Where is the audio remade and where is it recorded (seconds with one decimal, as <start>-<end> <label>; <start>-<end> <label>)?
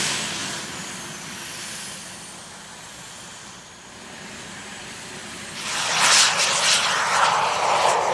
0.0-8.1 recorded